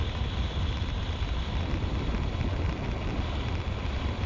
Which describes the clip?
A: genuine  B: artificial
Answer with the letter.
A